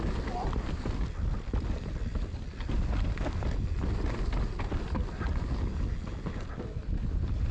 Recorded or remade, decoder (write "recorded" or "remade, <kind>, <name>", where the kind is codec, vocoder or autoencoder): recorded